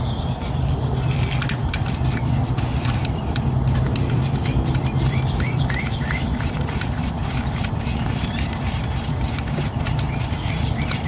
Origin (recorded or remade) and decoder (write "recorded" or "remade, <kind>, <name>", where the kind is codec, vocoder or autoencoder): remade, vocoder, BigVGAN v2